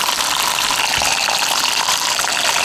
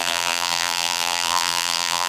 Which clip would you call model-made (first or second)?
second